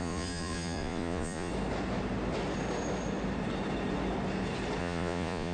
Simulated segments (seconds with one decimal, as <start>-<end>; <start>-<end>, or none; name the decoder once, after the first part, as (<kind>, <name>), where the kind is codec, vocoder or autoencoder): 0.0-1.5 (vocoder, Vocos); 4.8-5.5